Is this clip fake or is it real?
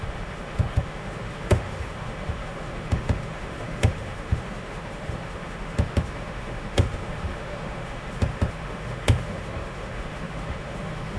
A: fake